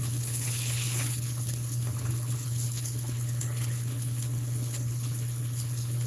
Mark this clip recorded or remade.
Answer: remade